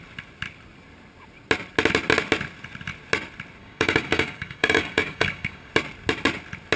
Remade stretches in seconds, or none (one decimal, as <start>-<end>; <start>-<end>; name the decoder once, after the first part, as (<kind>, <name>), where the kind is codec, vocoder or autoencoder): 3.6-5.7 (codec, DAC)